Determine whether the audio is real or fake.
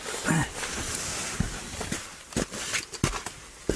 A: real